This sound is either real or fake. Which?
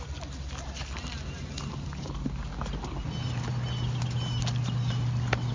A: real